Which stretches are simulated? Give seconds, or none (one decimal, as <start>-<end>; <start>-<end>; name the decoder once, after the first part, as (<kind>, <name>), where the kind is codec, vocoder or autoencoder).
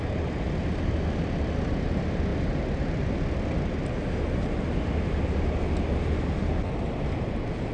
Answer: none